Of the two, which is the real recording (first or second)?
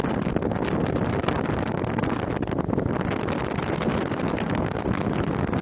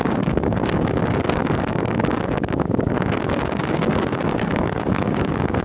first